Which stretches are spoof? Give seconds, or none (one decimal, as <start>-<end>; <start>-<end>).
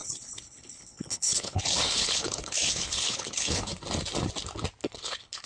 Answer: 0.0-3.7; 4.8-5.5